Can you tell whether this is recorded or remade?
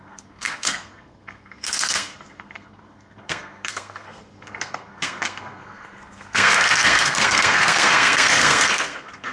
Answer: remade